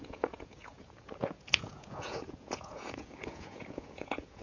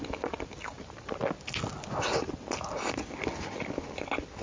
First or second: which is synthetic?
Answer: first